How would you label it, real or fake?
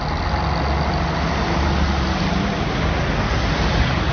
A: real